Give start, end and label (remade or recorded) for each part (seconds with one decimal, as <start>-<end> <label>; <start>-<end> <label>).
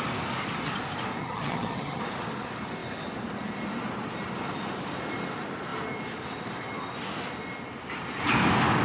0.0-1.2 recorded; 1.2-2.0 remade; 2.0-8.8 recorded